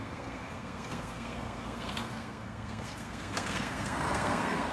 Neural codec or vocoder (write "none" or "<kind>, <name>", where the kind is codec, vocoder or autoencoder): codec, SNAC